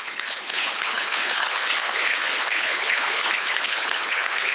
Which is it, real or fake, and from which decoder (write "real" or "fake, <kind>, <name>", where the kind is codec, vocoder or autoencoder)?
fake, codec, HILCodec